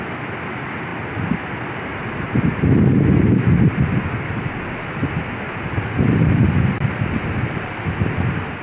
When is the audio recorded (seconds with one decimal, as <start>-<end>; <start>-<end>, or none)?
0.0-0.9; 3.5-8.6